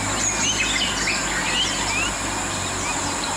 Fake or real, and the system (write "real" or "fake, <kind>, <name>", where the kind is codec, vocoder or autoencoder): real